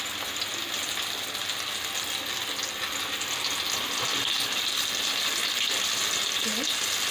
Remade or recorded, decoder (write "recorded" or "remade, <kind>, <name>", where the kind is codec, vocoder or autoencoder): recorded